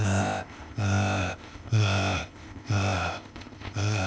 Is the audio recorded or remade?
remade